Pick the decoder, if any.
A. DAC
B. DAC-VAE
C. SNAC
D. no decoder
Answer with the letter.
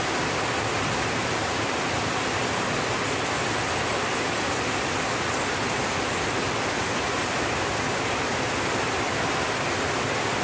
D